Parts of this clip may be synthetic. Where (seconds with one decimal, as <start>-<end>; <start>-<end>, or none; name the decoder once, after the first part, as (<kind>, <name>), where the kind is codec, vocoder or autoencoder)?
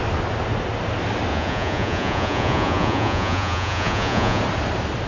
1.3-4.4 (vocoder, Vocos)